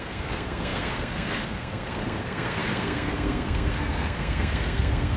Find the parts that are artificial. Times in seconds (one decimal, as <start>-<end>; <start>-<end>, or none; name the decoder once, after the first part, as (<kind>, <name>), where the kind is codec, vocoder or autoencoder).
0.0-5.2 (codec, SNAC)